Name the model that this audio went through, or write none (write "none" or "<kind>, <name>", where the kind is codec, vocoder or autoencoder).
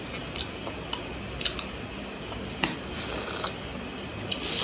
none